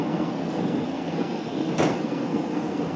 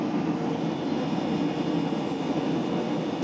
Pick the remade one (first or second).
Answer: first